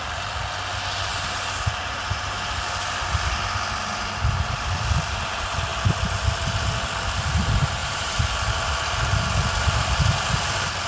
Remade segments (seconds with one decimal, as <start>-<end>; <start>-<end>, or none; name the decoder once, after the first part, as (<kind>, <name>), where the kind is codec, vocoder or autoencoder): 1.1-2.6 (vocoder, BigVGAN v2); 7.8-8.3